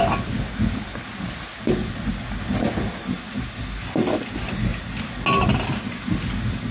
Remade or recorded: recorded